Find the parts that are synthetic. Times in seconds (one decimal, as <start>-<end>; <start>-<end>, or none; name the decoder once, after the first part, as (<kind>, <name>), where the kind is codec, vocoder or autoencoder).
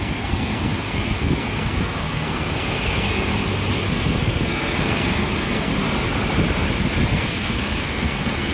0.0-3.3 (codec, SNAC); 3.9-5.7; 7.1-8.5